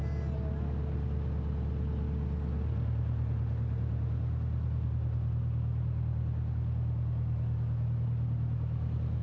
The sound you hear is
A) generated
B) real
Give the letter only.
B